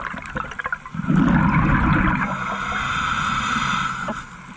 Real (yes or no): yes